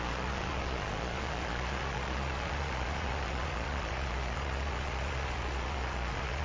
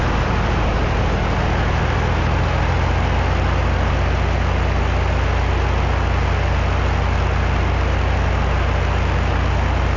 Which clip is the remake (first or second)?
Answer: first